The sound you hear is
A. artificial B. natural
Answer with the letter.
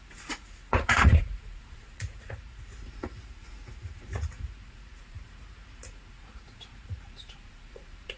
A